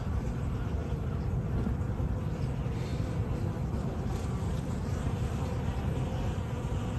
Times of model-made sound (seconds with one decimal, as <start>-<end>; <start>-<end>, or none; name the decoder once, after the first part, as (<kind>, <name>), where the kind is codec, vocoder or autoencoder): 0.8-2.0 (vocoder, BigVGAN v2); 2.9-5.8